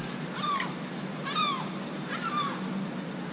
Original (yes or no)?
yes